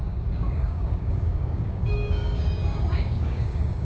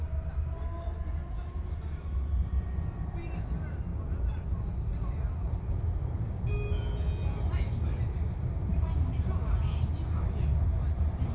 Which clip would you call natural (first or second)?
second